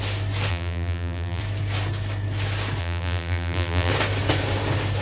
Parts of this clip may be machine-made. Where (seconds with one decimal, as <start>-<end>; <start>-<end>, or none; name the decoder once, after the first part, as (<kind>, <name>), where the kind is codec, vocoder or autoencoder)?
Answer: 0.5-1.4 (vocoder, BigVGAN v2); 2.8-3.9